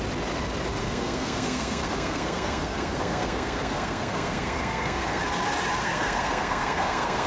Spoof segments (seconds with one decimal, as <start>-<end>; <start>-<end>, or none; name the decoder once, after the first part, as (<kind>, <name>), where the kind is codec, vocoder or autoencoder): 0.8-5.2 (codec, SNAC); 5.8-7.3